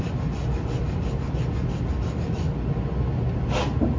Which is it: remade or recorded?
recorded